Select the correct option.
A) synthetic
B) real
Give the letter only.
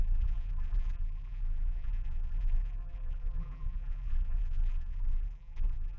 A